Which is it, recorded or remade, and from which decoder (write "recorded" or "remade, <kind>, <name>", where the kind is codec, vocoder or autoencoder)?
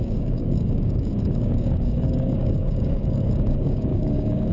remade, codec, DAC